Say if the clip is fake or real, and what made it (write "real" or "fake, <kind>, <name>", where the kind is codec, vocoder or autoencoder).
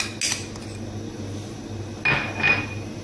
real